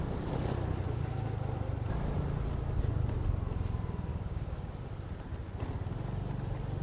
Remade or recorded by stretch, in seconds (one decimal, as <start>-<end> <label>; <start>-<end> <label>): 0.0-4.1 recorded; 4.1-4.7 remade; 4.7-6.8 recorded

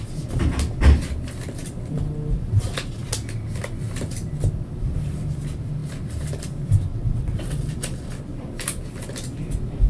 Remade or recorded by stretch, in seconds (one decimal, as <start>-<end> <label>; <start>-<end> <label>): 0.0-6.9 recorded; 6.9-7.7 remade; 7.7-9.9 recorded

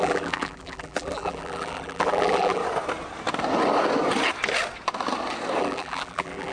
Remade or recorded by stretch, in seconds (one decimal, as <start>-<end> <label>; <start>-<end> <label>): 0.0-2.6 remade; 2.6-5.6 recorded; 5.6-6.5 remade

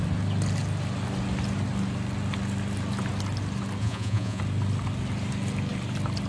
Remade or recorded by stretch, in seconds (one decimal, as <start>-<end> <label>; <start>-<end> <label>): 0.0-3.8 recorded; 3.8-4.4 remade; 4.4-6.3 recorded

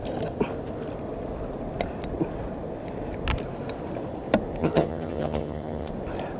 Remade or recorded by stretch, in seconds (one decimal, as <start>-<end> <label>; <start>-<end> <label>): 0.0-4.6 recorded; 4.6-5.9 remade; 5.9-6.4 recorded

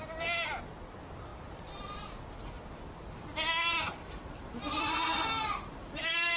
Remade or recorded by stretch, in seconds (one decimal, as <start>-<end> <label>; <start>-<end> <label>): 0.0-6.4 recorded

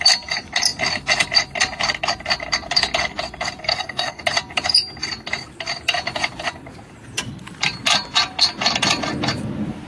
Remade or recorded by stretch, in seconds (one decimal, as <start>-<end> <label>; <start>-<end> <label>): 0.0-3.6 recorded; 3.6-4.2 remade; 4.2-9.9 recorded

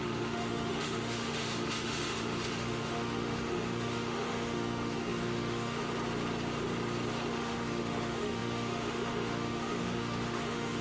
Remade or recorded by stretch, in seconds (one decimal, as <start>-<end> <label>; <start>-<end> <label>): 0.0-5.8 remade; 5.8-7.3 recorded; 7.3-10.8 remade